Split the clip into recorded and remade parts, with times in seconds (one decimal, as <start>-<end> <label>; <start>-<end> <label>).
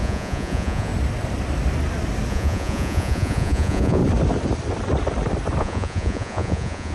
0.0-0.9 remade; 0.9-2.3 recorded; 2.3-4.0 remade; 4.0-5.6 recorded; 5.6-6.9 remade